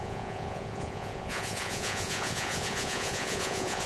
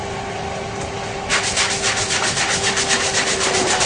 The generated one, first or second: first